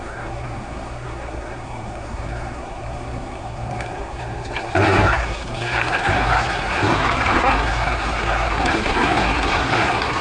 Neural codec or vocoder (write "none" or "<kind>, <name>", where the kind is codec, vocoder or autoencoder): codec, SNAC